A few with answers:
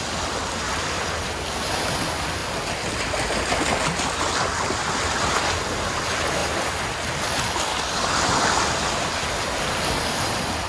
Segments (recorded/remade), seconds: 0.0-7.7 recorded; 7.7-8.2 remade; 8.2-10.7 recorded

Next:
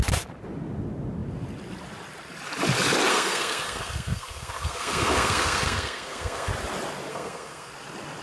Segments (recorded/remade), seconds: 0.0-3.1 recorded; 3.1-6.5 remade; 6.5-7.1 recorded; 7.1-7.7 remade; 7.7-8.2 recorded

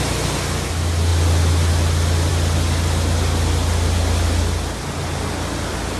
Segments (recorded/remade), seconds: 0.0-6.0 recorded